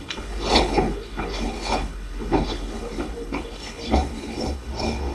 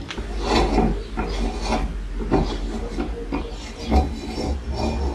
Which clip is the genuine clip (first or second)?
second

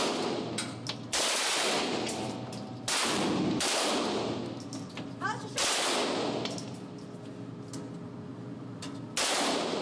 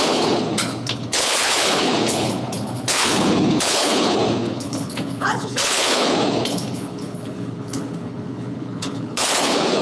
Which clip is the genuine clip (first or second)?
first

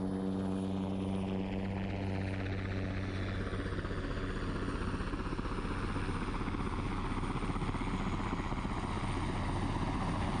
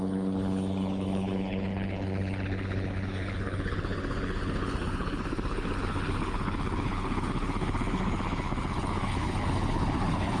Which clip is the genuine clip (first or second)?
first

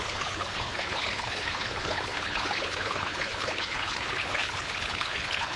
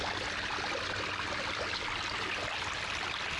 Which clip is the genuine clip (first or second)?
second